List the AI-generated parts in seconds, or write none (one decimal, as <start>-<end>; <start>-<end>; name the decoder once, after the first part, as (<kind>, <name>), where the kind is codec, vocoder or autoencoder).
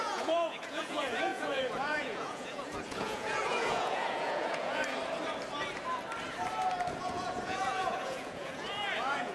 0.0-4.8 (vocoder, Vocos); 7.0-9.3